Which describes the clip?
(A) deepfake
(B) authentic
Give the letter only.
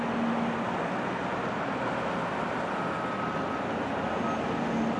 B